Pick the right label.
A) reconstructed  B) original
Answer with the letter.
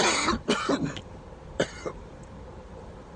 A